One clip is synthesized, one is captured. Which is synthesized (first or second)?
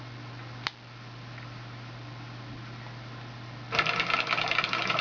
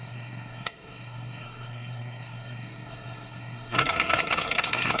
second